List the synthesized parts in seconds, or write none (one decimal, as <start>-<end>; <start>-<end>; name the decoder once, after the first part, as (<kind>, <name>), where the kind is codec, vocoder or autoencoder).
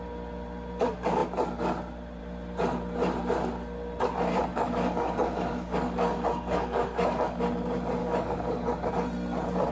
4.5-7.4 (codec, DAC); 8.0-8.9